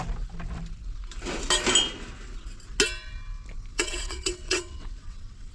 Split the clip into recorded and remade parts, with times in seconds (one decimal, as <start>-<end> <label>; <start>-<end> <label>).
0.0-3.7 recorded; 3.7-5.5 remade